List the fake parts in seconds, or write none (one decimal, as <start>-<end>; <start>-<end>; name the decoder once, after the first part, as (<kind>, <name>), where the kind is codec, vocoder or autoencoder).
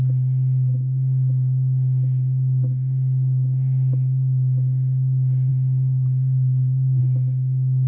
5.5-7.0 (codec, SNAC)